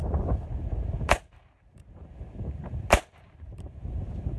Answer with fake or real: fake